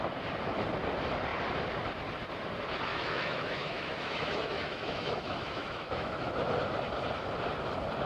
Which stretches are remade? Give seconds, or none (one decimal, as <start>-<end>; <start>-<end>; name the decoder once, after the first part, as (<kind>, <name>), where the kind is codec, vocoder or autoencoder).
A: 2.9-6.3 (autoencoder, DAC-VAE)